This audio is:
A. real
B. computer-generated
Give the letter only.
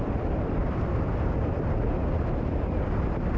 A